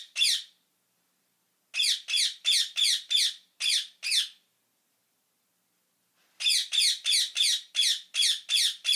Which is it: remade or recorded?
recorded